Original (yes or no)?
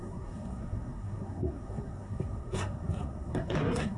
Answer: no